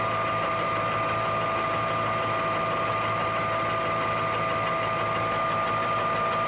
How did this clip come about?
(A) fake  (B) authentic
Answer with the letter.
B